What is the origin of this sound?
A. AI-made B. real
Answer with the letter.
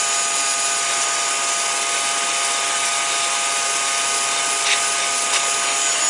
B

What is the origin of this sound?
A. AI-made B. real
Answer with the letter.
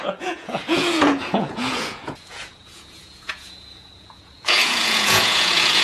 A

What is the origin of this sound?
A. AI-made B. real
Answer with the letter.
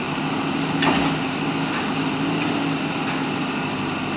B